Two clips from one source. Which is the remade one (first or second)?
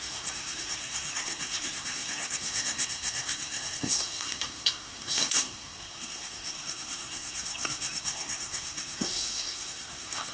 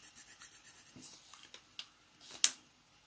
first